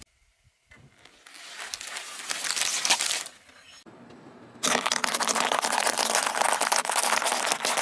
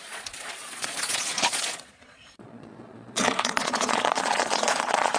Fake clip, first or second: second